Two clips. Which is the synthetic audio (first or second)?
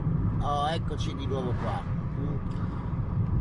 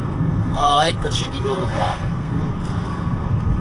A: second